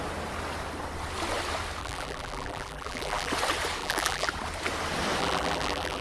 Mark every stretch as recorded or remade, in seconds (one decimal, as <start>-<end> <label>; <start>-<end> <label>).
0.0-1.8 recorded; 1.8-3.3 remade; 3.3-3.8 recorded; 3.8-4.3 remade; 4.3-5.2 recorded; 5.2-6.0 remade

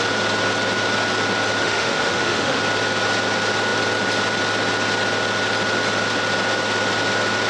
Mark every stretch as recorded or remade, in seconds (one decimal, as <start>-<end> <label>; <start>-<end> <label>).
0.0-1.6 recorded; 1.6-2.6 remade; 2.6-7.5 recorded

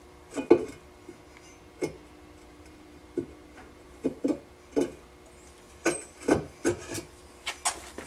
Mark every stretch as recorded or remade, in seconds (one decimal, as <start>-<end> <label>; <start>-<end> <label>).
0.0-2.5 recorded; 2.5-3.2 remade; 3.2-8.1 recorded